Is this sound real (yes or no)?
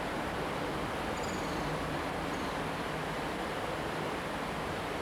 yes